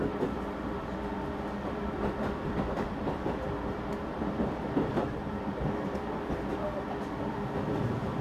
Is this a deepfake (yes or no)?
yes